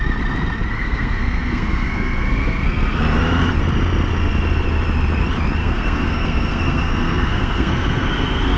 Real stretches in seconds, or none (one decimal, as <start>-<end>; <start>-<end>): 0.0-0.7; 3.0-5.6